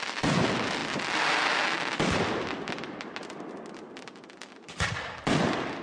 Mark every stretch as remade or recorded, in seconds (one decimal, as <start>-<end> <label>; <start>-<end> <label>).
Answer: 0.0-5.8 recorded